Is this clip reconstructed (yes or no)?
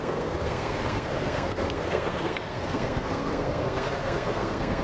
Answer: yes